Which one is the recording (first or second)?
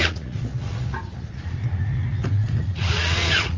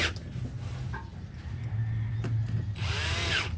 second